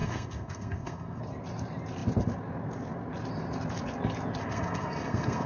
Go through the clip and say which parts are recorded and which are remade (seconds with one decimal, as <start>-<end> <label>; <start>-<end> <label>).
0.0-1.2 remade; 1.2-4.4 recorded; 4.4-5.5 remade

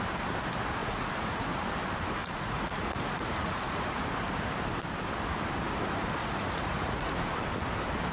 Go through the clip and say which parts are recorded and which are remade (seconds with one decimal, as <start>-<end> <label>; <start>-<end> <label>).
0.0-0.8 recorded; 0.8-1.6 remade; 1.6-2.2 recorded; 2.2-4.0 remade; 4.0-6.2 recorded; 6.2-7.1 remade; 7.1-8.1 recorded

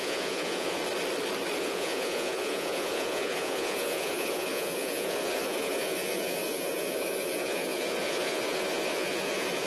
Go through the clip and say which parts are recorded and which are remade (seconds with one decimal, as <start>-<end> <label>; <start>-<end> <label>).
0.0-0.8 remade; 0.8-1.6 recorded; 1.6-9.7 remade

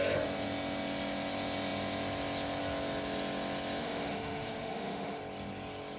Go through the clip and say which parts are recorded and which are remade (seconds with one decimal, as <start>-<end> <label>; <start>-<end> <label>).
0.0-3.8 recorded; 3.8-5.2 remade; 5.2-6.0 recorded

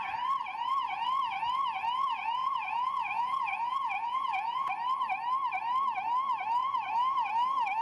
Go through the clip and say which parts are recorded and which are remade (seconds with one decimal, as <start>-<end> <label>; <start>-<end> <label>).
0.0-2.4 recorded; 2.4-4.7 remade; 4.7-6.6 recorded; 6.6-7.3 remade; 7.3-7.8 recorded

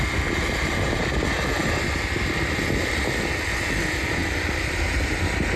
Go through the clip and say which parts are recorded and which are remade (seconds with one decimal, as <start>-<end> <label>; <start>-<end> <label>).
0.0-4.2 recorded; 4.2-4.8 remade; 4.8-5.6 recorded